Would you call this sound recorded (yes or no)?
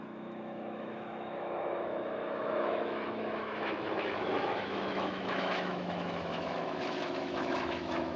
no